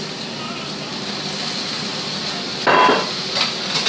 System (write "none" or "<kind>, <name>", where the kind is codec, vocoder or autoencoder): none